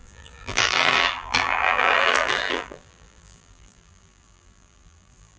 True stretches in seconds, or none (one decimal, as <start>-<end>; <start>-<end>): none